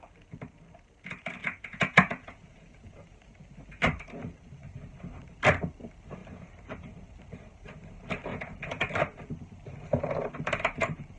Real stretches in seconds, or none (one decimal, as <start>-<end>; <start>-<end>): 0.0-1.4; 3.1-8.3; 8.9-11.2